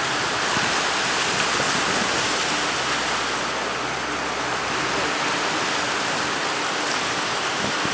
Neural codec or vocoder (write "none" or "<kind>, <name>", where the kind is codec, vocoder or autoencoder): none